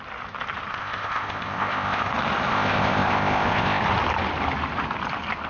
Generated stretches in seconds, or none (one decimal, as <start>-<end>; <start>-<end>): 0.7-2.1; 2.5-3.8